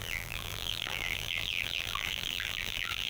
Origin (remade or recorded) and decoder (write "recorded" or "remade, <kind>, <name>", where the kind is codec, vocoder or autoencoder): remade, vocoder, BigVGAN v2